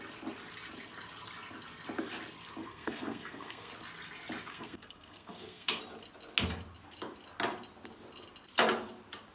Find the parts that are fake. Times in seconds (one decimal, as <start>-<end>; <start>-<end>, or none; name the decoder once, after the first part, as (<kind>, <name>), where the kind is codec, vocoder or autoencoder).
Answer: 2.6-3.7 (codec, SNAC); 4.5-5.8